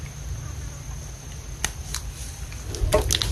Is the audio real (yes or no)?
yes